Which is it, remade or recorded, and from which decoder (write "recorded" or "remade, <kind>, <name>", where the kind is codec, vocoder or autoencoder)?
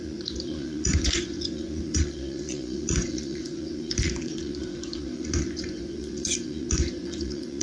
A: remade, vocoder, Vocos